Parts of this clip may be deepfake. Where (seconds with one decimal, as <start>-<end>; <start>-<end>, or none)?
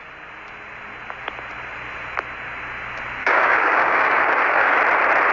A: 3.2-4.8